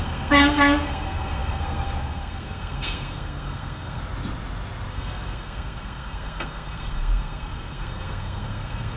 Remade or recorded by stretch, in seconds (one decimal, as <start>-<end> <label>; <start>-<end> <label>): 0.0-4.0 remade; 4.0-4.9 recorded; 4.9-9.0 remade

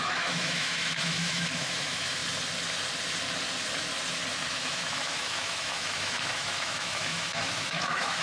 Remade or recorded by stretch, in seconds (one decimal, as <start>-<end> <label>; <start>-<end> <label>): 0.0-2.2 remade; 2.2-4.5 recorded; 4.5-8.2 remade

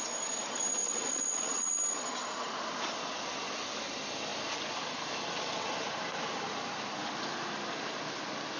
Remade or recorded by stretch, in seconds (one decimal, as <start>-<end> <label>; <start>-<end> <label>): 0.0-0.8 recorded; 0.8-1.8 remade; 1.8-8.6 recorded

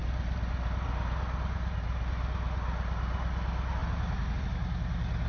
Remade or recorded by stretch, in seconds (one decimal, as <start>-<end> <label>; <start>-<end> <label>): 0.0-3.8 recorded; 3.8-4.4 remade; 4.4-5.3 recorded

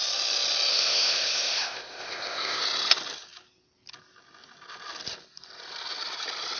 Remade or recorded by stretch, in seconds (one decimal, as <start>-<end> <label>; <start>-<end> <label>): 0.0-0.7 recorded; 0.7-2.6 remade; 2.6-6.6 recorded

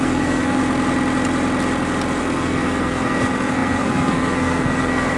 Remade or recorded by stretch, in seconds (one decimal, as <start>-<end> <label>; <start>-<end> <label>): 0.0-0.6 remade; 0.6-2.2 recorded; 2.2-5.2 remade

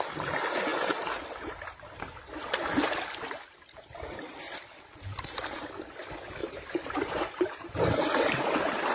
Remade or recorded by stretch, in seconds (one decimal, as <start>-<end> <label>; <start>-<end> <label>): 0.0-6.4 recorded; 6.4-8.5 remade; 8.5-8.9 recorded